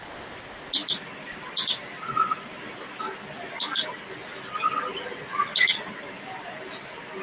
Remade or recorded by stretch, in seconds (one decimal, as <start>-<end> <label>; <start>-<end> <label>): 0.0-7.2 recorded